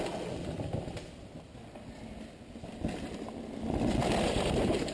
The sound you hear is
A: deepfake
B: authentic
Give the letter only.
B